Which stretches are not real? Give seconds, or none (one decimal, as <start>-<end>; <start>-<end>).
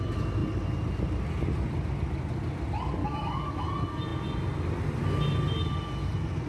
3.0-3.6